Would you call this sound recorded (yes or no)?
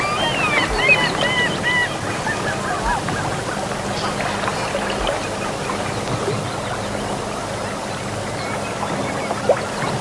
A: yes